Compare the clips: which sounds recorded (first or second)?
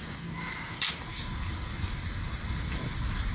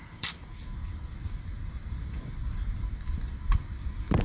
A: first